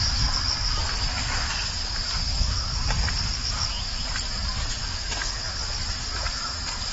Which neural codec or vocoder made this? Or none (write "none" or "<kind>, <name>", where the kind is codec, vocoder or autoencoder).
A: none